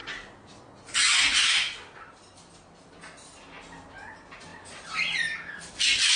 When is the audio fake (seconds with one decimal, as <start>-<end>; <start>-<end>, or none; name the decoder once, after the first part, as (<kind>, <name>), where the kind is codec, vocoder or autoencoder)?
none